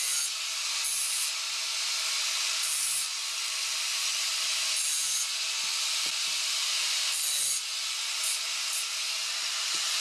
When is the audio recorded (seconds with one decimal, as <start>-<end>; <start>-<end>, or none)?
0.0-10.0